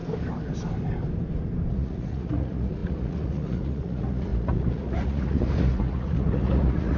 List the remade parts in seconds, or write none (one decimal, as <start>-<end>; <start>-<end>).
1.7-7.0